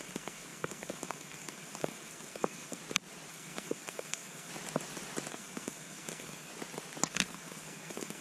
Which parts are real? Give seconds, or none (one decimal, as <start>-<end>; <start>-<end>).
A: 2.8-3.3; 4.5-5.3; 6.5-7.1